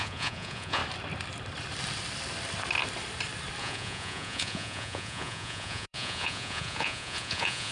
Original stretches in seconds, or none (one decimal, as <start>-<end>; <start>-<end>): 0.8-3.6